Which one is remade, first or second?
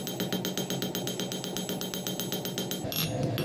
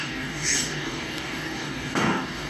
second